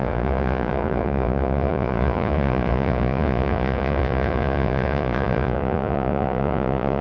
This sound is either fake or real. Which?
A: fake